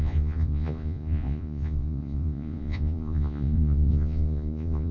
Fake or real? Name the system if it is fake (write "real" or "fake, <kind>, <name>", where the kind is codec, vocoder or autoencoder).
fake, vocoder, Vocos